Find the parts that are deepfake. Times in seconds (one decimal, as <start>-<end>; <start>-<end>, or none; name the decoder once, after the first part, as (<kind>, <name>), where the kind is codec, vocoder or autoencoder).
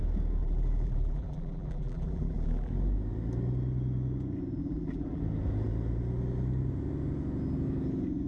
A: 0.4-2.7 (vocoder, BigVGAN v2); 4.6-5.2